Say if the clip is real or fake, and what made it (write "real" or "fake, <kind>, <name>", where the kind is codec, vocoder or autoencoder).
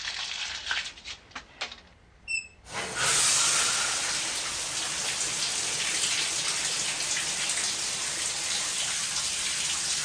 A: real